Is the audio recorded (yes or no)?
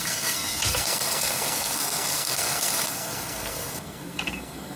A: no